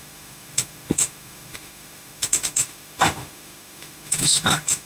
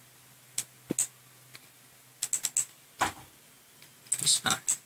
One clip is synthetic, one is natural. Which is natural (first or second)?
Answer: second